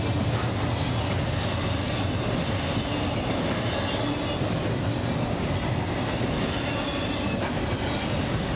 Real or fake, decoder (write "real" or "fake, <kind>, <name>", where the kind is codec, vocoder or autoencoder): real